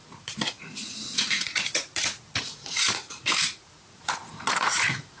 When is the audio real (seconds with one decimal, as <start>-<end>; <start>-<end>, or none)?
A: none